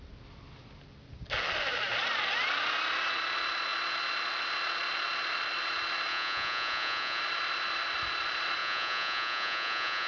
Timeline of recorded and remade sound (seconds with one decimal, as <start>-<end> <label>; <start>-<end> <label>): 0.0-6.1 recorded; 6.1-7.2 remade; 7.2-8.6 recorded; 8.6-10.1 remade